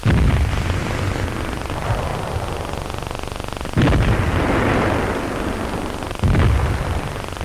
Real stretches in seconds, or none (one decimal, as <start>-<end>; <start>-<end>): 0.0-7.4